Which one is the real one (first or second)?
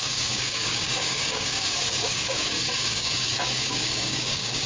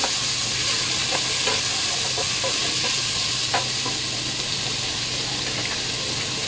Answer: second